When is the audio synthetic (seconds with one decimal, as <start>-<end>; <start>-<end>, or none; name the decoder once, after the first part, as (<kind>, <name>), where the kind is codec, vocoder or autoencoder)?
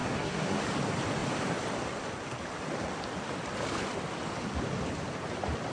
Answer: 0.0-0.6 (codec, SNAC)